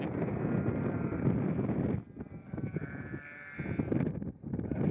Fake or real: real